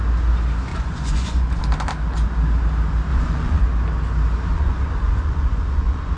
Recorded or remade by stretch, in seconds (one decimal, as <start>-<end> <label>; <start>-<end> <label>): 0.0-0.7 recorded; 0.7-1.6 remade; 1.6-3.1 recorded; 3.1-3.6 remade; 3.6-4.5 recorded; 4.5-6.2 remade